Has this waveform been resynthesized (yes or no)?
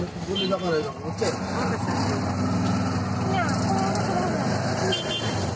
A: no